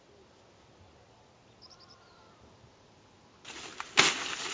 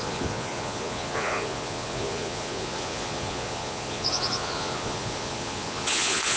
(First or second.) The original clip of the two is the first